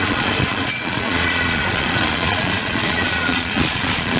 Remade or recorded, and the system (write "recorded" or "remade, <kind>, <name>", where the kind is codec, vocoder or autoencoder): remade, vocoder, Vocos